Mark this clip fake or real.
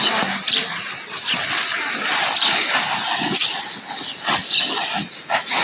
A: real